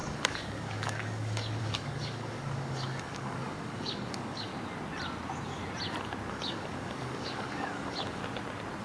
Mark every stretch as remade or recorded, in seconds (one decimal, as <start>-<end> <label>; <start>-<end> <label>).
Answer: 0.0-4.5 remade; 4.5-6.3 recorded; 6.3-8.2 remade; 8.2-8.8 recorded